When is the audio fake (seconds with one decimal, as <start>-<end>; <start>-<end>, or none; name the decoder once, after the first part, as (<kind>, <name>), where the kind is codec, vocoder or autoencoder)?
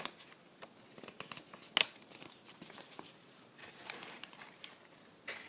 2.0-4.4 (vocoder, BigVGAN v2)